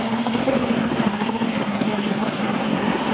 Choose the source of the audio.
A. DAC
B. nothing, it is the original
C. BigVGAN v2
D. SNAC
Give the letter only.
D